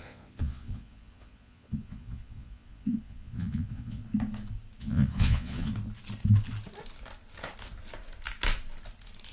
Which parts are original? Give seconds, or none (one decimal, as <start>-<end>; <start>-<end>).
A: 4.0-4.8; 5.7-9.3